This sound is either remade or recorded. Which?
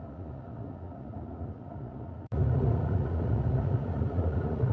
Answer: remade